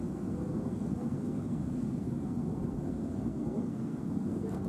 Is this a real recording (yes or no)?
no